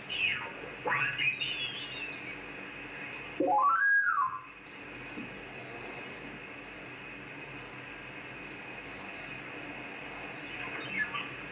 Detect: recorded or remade recorded